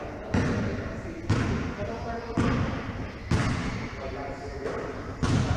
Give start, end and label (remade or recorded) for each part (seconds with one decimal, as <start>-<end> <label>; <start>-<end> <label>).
0.0-5.6 recorded